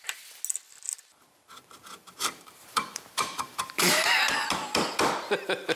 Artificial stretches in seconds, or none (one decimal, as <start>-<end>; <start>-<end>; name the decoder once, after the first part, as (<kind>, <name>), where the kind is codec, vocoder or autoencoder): 2.0-4.3 (vocoder, BigVGAN v2)